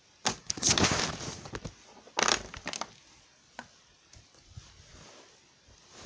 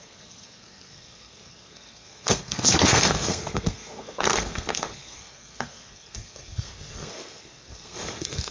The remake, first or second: second